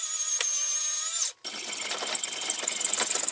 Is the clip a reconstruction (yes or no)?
no